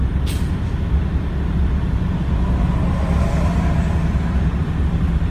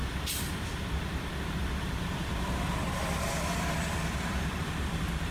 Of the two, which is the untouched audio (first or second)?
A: first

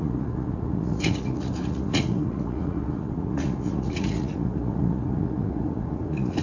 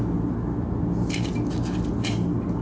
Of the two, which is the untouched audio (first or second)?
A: second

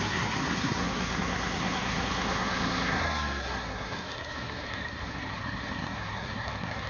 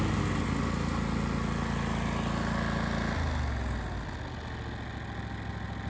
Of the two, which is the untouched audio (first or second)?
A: second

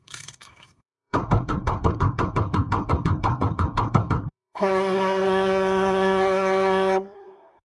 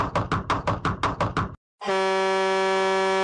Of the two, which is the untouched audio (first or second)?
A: second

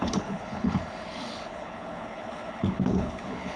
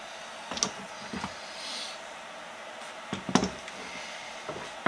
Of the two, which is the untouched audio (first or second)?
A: second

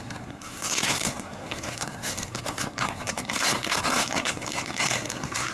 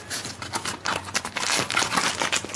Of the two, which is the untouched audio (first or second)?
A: second